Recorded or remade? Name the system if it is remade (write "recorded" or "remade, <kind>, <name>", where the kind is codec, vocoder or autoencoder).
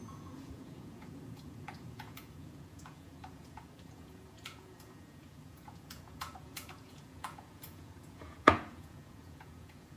remade, vocoder, Vocos